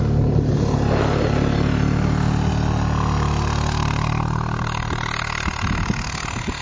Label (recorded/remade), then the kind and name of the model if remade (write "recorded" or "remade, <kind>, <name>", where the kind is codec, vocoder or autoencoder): recorded